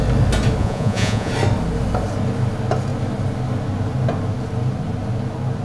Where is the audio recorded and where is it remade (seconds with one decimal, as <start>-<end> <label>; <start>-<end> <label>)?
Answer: 0.0-0.6 recorded; 0.6-1.3 remade; 1.3-5.6 recorded